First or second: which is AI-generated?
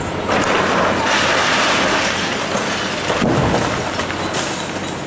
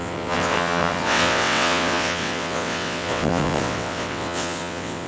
second